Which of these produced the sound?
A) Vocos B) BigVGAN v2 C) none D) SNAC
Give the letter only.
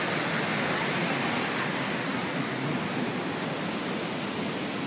C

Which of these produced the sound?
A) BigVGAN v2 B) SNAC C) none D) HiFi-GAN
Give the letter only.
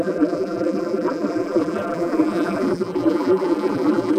A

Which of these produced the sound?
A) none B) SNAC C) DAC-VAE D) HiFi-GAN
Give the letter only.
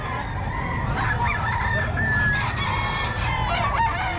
A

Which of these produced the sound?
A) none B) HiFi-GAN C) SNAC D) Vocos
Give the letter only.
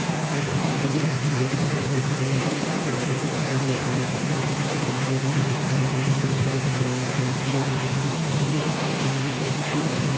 C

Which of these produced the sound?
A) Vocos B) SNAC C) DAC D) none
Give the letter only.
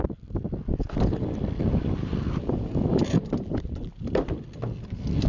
D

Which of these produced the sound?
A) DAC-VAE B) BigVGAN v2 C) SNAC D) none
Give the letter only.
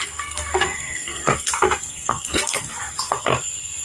C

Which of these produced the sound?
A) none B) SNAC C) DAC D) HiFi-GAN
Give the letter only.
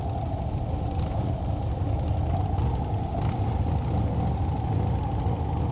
A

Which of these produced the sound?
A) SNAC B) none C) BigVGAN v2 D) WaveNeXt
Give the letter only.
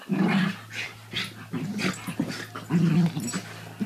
B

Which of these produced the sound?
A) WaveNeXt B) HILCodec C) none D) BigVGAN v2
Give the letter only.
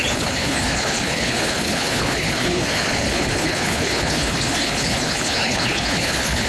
B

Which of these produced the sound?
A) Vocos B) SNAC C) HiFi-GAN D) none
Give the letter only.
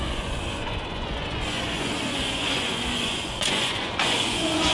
A